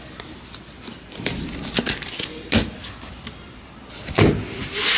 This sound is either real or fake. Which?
real